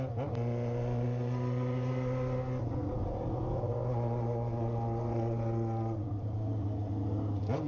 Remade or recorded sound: recorded